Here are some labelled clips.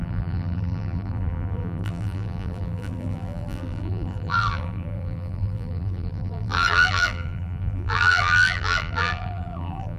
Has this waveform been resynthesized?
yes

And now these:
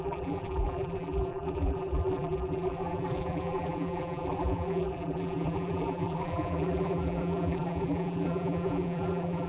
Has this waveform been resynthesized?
yes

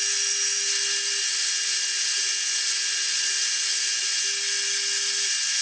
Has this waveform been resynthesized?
no